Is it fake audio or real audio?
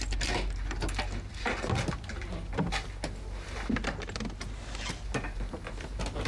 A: real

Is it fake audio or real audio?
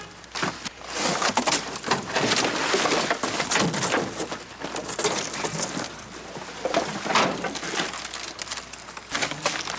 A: real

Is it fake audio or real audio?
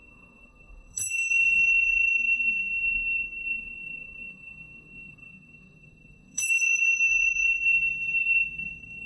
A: fake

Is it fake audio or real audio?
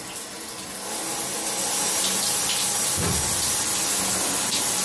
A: real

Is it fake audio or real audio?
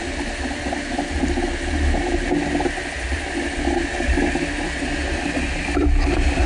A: real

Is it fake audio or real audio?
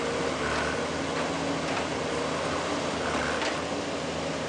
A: real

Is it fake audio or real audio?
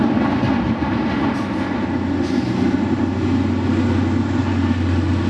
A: real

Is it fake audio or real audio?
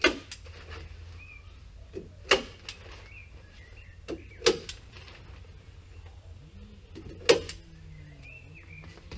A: real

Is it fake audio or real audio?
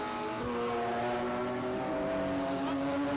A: real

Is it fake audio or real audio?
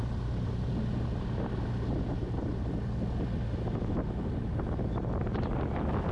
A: real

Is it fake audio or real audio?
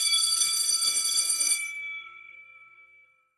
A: fake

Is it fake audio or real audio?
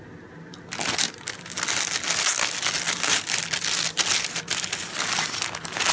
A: real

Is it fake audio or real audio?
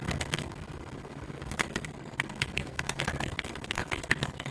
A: fake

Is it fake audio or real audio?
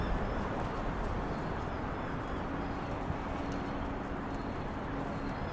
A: real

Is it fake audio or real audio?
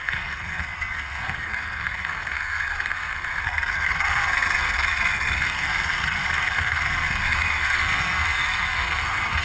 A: fake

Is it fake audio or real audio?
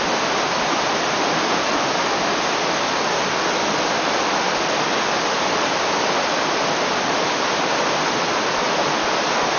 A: real